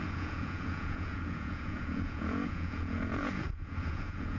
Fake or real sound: fake